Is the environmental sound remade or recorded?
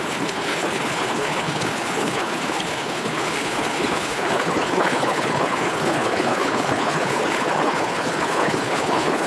remade